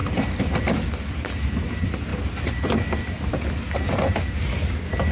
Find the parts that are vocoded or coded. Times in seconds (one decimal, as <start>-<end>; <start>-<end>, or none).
none